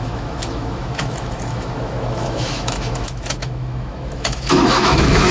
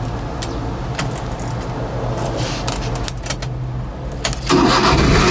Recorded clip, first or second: second